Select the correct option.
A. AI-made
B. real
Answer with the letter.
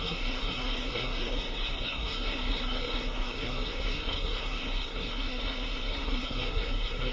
A